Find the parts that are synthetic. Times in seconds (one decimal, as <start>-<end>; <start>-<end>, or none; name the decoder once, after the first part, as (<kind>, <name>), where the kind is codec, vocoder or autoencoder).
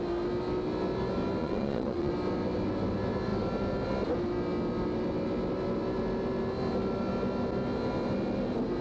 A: 1.4-2.1 (vocoder, Vocos)